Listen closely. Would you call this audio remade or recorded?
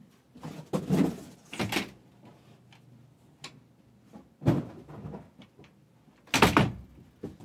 recorded